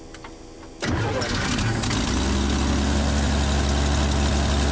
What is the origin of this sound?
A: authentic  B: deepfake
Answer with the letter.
A